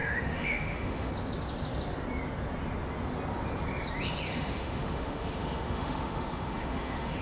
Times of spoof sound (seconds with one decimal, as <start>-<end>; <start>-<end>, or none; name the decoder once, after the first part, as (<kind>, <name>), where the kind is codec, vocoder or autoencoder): 0.0-1.1 (autoencoder, DAC-VAE); 4.3-7.2

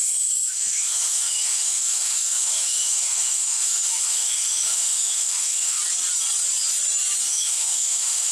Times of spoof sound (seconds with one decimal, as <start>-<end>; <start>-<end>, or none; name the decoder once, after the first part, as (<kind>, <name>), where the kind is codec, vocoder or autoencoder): 0.0-5.8 (autoencoder, DAC-VAE); 7.3-8.3

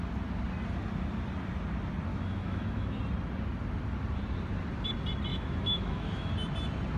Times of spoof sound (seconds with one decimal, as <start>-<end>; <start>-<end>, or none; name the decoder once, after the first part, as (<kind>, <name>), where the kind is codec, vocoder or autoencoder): 2.1-3.0 (autoencoder, DAC-VAE); 5.3-6.3

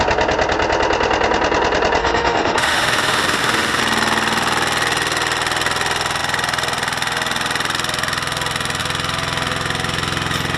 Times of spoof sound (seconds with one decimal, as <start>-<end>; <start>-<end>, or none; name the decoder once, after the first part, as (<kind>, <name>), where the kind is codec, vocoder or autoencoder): 2.0-3.8 (autoencoder, DAC-VAE)

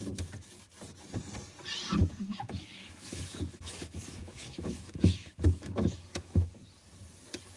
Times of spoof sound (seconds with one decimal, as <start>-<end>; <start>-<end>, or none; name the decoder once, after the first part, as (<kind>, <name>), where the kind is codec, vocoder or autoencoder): 2.0-6.5 (autoencoder, DAC-VAE)

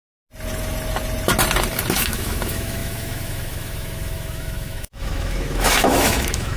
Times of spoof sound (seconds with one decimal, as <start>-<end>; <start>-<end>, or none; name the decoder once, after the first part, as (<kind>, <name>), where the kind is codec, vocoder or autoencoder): 1.9-6.6 (autoencoder, DAC-VAE)